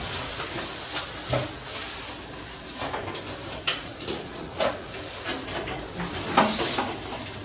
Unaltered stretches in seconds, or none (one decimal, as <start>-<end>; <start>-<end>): 0.0-3.7; 4.9-7.4

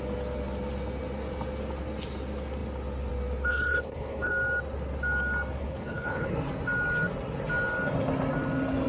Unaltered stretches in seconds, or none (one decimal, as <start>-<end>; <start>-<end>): 0.0-3.5; 4.3-5.6; 6.3-8.9

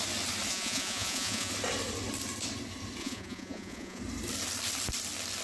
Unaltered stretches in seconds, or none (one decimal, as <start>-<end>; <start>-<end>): 0.0-0.5; 1.5-3.0; 4.0-5.4

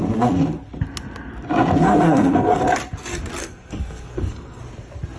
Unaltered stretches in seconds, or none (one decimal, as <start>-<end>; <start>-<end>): 0.0-1.8; 2.6-3.4; 4.6-5.2

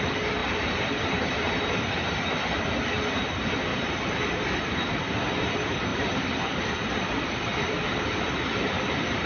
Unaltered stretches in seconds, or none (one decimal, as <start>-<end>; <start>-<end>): 0.0-0.4; 1.7-3.7; 5.5-5.9; 8.3-9.3

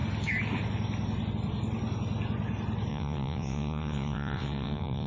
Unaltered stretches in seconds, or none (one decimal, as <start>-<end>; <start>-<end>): 0.0-2.9

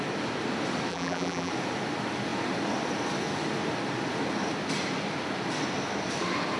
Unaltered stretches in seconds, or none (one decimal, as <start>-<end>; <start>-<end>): 0.0-0.9; 1.5-6.6

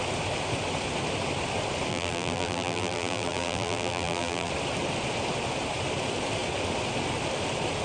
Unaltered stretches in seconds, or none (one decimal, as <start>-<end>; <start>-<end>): 0.0-1.9; 4.5-7.8